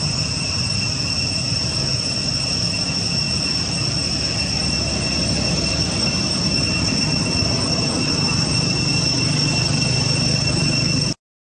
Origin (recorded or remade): recorded